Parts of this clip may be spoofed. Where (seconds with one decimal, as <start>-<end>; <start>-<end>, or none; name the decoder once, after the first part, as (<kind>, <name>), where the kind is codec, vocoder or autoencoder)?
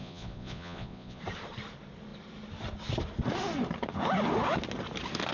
0.0-1.2 (vocoder, Vocos)